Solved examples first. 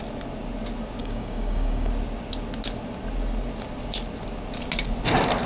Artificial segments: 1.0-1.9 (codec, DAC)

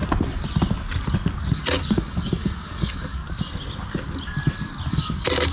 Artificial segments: 1.5-3.2 (codec, DAC); 4.9-5.5

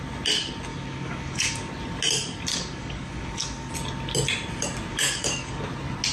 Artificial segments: 0.7-1.7 (codec, DAC); 2.5-3.7; 4.9-5.6

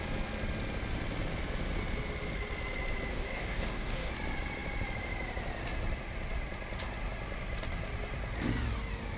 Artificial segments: 3.1-4.1 (codec, DAC)

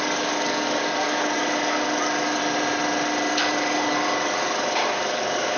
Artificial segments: 0.0-2.4 (codec, DAC); 3.3-5.6

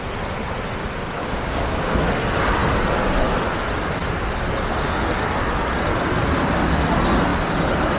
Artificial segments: 1.2-2.0 (codec, DAC)

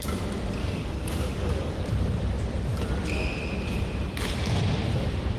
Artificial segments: 0.6-1.8 (codec, DAC)